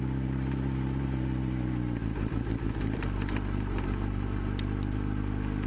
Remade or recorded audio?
recorded